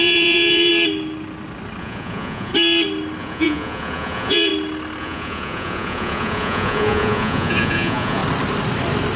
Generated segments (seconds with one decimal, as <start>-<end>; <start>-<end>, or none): 0.0-0.7; 1.8-2.5; 3.2-4.5; 5.0-8.2